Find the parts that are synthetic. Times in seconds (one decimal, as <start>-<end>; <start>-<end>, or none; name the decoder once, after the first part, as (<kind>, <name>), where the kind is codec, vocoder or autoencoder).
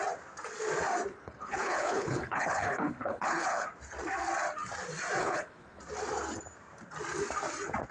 1.1-3.7 (codec, HILCodec); 5.2-5.8